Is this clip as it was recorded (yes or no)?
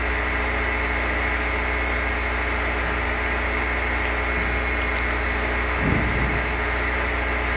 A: yes